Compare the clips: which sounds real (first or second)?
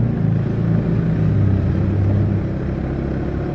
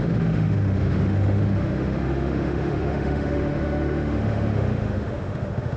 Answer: first